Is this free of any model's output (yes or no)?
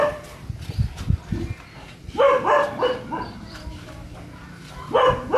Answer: yes